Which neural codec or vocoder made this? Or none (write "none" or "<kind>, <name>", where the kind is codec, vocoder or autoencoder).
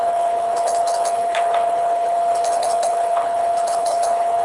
codec, HILCodec